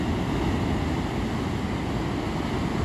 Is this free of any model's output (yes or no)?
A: yes